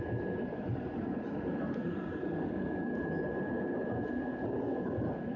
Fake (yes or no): no